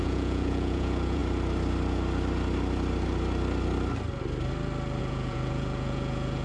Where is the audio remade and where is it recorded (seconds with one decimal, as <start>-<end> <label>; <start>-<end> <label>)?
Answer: 0.0-1.2 remade; 1.2-5.0 recorded; 5.0-6.4 remade